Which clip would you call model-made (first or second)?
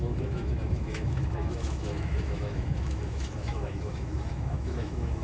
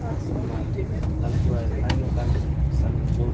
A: first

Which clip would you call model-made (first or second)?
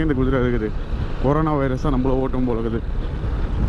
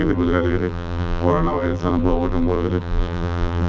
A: second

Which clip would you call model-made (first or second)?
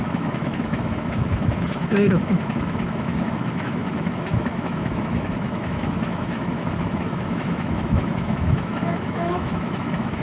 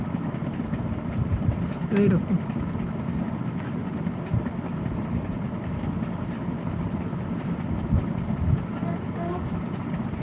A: first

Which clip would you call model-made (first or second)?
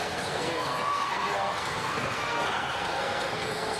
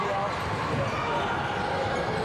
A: first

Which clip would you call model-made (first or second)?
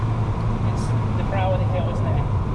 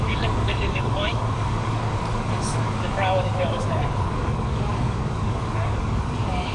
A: second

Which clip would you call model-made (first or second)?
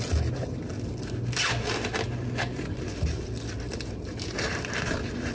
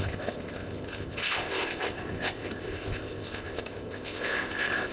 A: second